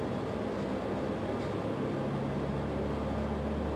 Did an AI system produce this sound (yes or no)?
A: no